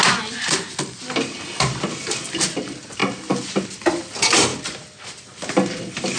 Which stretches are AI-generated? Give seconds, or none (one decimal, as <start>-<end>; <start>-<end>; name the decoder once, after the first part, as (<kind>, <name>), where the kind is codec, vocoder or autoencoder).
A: none